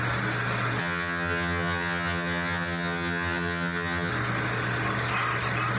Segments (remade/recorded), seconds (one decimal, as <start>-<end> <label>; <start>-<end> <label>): 0.0-0.8 recorded; 0.8-4.1 remade; 4.1-5.8 recorded